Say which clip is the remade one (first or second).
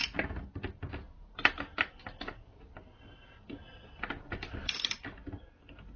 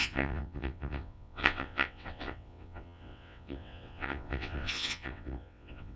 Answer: second